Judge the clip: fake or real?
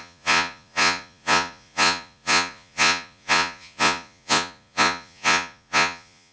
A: fake